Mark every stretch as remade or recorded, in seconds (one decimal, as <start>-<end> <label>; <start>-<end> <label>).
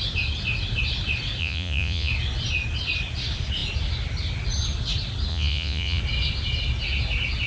0.0-1.4 recorded; 1.4-2.1 remade; 2.1-5.3 recorded; 5.3-6.0 remade; 6.0-7.5 recorded